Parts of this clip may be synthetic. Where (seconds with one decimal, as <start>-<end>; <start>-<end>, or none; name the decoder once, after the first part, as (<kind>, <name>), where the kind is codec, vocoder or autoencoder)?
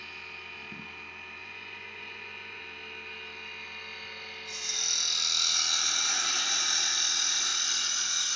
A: 1.4-2.6 (vocoder, Vocos)